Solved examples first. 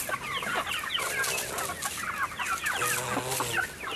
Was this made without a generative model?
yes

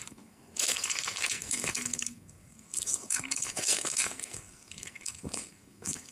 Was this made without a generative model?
no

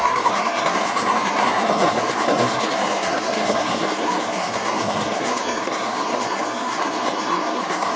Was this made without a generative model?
no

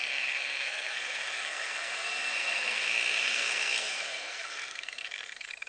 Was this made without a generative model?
no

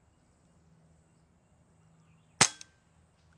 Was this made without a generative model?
yes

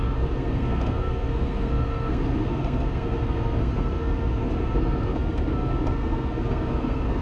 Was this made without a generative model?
no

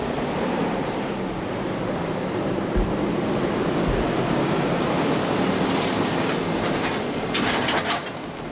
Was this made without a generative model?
yes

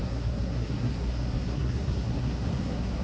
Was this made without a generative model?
no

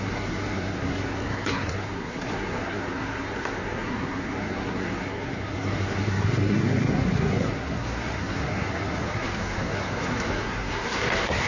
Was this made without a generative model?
no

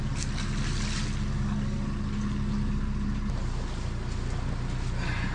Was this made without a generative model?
yes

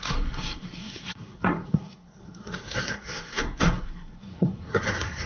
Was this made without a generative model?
no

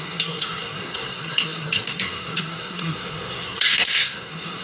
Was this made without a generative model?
no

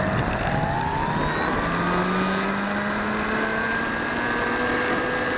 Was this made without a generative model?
yes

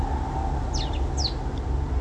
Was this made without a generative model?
yes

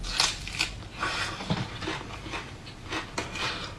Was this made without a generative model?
yes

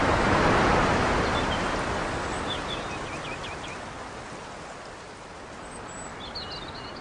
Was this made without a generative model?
yes